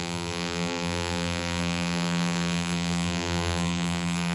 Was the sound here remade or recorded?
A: remade